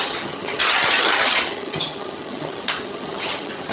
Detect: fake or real fake